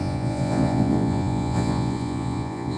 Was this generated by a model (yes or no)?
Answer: yes